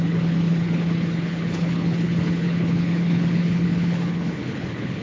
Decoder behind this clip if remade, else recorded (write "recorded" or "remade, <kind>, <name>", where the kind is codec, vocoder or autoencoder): remade, codec, HILCodec